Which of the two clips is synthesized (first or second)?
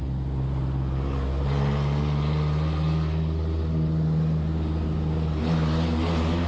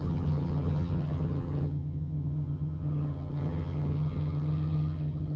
second